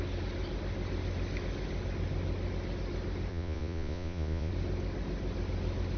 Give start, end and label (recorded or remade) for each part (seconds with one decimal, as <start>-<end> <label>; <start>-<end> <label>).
0.0-3.3 recorded; 3.3-4.5 remade; 4.5-6.0 recorded